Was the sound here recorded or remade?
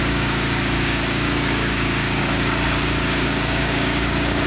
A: remade